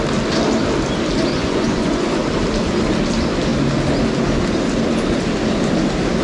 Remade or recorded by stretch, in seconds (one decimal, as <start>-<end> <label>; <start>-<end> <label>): 0.0-1.3 recorded; 1.3-2.2 remade; 2.2-6.2 recorded